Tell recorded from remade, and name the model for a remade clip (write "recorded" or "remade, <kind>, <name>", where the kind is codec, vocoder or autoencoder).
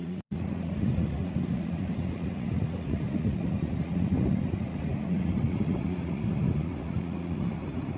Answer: remade, vocoder, Vocos